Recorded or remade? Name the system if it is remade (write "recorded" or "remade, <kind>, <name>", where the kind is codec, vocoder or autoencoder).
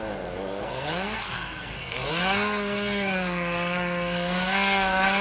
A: remade, codec, SNAC